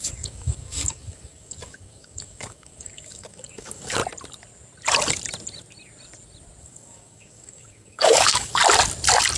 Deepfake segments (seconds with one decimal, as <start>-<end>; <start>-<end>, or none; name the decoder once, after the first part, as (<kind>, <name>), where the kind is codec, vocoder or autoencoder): 0.0-4.0 (codec, DAC); 6.6-8.6

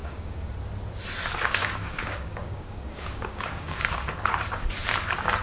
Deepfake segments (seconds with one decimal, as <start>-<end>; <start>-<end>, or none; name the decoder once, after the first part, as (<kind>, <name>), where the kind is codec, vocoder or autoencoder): 0.0-0.5 (codec, DAC); 1.6-3.8

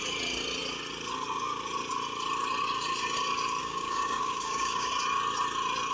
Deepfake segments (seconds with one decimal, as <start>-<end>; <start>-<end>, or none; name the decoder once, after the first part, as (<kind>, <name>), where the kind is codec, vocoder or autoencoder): 3.6-4.9 (codec, DAC)

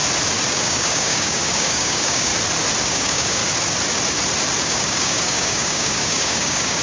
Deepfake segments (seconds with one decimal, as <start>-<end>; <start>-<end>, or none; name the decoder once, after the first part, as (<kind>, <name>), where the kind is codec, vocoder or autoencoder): 0.5-2.3 (codec, DAC); 2.8-3.4; 4.6-6.8

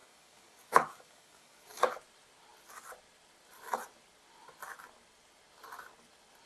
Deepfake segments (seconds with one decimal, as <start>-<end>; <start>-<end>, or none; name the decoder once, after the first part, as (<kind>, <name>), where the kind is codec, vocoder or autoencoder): 0.0-1.8 (codec, DAC)

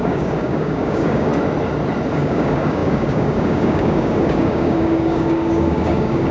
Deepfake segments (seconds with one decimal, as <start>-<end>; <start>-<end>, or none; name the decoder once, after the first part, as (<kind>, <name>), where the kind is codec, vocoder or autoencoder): 0.0-1.3 (codec, DAC); 2.1-6.3

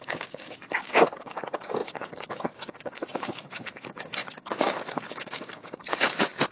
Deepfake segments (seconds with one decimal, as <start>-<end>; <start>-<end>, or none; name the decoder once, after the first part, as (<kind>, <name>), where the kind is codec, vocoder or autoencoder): 0.0-6.5 (codec, DAC)

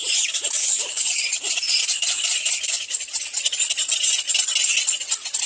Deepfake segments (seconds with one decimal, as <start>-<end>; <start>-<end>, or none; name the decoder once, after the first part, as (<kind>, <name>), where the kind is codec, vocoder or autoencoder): 0.6-1.2 (codec, DAC)